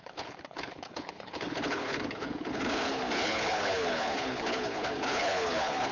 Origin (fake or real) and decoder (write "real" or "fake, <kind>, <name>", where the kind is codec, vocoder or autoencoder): fake, codec, HILCodec